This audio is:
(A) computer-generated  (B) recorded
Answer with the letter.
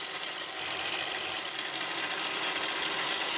B